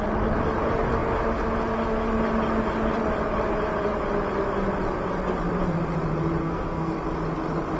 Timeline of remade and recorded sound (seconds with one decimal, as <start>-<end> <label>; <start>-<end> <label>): 0.0-6.4 recorded; 6.4-6.9 remade; 6.9-7.8 recorded